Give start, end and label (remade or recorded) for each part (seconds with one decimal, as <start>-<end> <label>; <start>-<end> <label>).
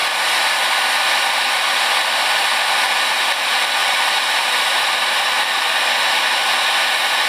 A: 0.0-3.8 recorded; 3.8-5.4 remade; 5.4-7.3 recorded